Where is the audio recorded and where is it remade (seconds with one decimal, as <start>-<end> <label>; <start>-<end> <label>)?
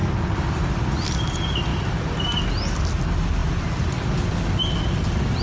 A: 0.0-5.4 recorded